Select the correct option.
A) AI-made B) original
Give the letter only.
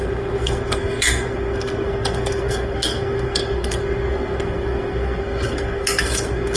A